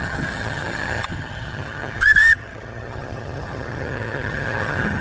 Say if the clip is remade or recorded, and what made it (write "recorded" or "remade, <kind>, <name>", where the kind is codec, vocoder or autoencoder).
remade, vocoder, HiFi-GAN